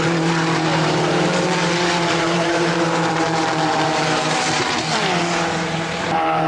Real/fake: fake